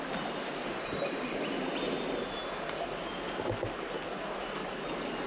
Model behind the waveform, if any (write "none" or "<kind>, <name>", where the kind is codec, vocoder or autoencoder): none